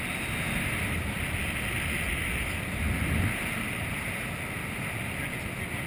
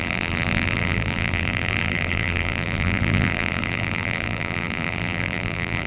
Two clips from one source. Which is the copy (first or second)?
second